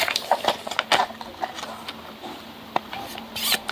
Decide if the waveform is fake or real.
real